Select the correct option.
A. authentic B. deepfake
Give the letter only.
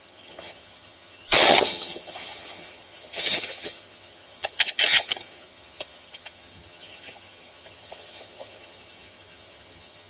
B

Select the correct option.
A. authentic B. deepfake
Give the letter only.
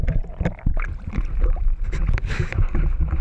B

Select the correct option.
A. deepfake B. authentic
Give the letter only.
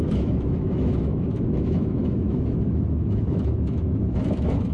A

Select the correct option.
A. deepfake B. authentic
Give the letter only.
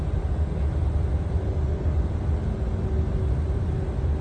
B